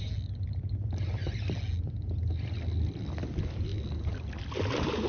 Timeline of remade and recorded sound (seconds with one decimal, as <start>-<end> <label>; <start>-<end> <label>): 0.0-5.1 recorded